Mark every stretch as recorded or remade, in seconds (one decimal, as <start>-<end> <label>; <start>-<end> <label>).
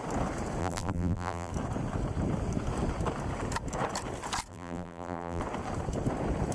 0.0-0.6 recorded; 0.6-1.5 remade; 1.5-4.5 recorded; 4.5-5.4 remade; 5.4-6.5 recorded